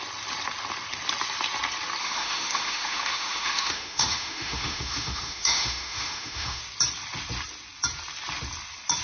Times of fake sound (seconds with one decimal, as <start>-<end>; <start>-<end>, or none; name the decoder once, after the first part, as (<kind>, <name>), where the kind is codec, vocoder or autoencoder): 2.0-6.6 (autoencoder, DAC-VAE)